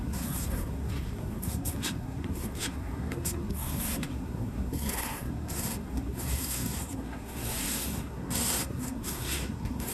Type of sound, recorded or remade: remade